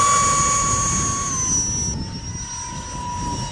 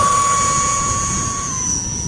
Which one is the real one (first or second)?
first